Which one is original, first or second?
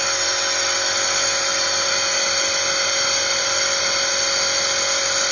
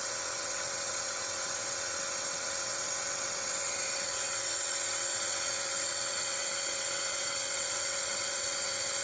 first